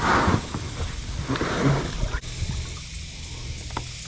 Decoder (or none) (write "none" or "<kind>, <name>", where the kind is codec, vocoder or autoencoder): none